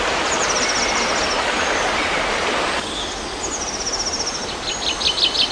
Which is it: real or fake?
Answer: real